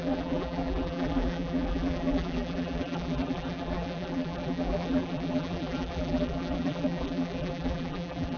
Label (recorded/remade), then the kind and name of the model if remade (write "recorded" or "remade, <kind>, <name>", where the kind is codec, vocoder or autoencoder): remade, vocoder, BigVGAN v2